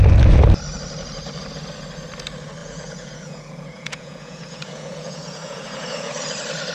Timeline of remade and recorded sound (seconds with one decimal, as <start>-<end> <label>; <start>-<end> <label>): 0.0-2.6 recorded; 2.6-6.2 remade; 6.2-6.7 recorded